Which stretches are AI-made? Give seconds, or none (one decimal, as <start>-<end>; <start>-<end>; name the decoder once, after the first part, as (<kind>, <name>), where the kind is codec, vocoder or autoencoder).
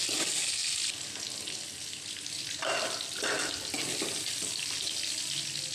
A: none